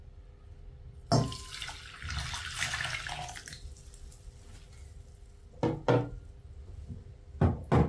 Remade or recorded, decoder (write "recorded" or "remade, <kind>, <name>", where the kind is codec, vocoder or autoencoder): recorded